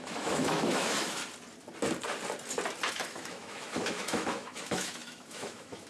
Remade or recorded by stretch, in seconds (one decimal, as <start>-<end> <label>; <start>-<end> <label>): 0.0-1.2 remade; 1.2-2.9 recorded; 2.9-5.9 remade